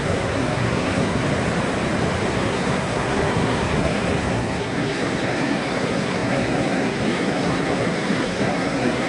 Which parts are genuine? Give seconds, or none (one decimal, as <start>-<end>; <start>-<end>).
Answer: 1.2-2.3